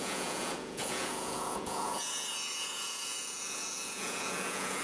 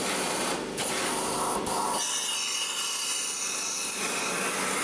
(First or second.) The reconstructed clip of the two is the first